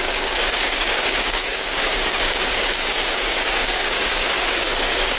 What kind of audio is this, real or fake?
fake